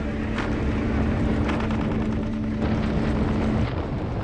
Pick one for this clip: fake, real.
real